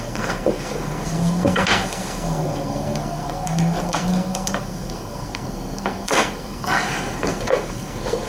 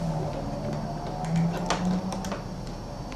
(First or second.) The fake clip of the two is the first